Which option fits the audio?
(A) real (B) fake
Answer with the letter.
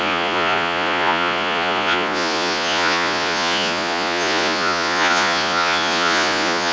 B